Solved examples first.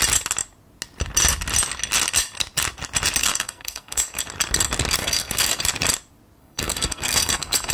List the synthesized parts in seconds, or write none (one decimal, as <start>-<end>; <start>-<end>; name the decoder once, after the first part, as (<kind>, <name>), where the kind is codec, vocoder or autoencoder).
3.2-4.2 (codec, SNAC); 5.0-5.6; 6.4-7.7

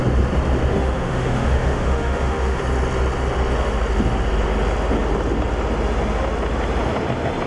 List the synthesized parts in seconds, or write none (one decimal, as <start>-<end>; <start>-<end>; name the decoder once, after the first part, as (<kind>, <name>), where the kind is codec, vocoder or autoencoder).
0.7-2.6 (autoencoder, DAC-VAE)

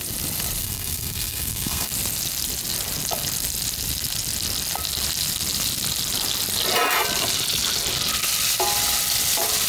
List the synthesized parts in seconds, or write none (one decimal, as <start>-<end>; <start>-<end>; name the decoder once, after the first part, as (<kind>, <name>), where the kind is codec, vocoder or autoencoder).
0.6-1.9 (codec, SNAC)